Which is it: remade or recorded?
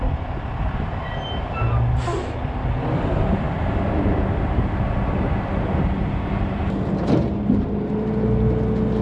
recorded